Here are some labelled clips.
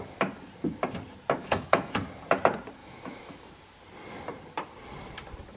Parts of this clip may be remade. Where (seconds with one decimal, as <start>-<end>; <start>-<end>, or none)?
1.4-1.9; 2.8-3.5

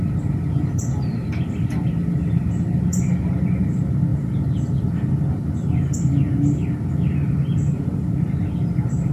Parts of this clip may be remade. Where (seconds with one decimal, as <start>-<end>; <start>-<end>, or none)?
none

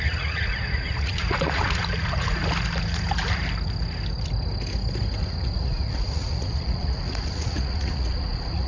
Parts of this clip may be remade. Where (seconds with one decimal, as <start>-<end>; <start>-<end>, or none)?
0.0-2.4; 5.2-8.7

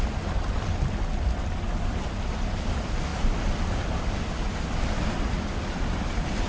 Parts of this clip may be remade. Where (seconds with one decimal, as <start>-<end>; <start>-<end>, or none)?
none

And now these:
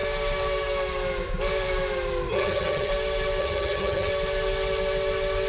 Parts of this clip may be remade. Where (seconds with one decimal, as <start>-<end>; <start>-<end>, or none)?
2.3-2.9; 3.4-4.1

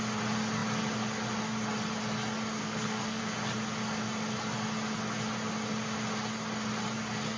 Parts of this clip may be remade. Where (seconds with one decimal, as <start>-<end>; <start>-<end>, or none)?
2.6-3.2

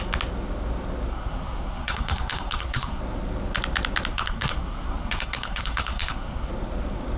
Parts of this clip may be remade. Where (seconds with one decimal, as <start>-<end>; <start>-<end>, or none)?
1.1-3.0; 4.1-6.5